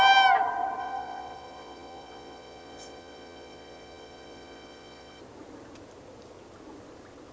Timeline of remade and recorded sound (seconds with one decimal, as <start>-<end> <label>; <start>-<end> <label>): 0.0-0.8 recorded; 0.8-5.2 remade; 5.2-7.3 recorded